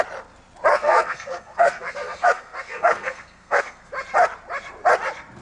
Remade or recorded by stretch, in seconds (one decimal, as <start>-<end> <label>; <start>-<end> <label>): 0.0-0.7 recorded; 0.7-3.9 remade; 3.9-5.4 recorded